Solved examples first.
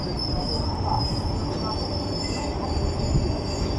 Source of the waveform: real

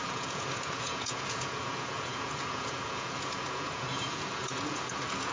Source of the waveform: fake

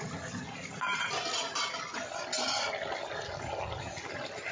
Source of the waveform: real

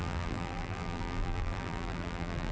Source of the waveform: fake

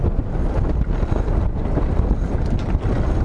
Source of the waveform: real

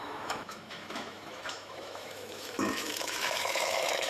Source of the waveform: fake